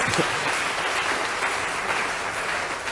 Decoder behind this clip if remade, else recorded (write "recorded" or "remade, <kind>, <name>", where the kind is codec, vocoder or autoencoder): recorded